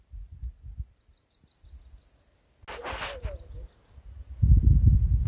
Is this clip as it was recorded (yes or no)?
yes